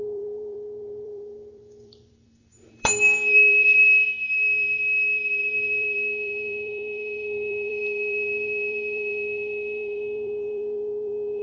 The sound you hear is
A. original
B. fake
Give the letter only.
B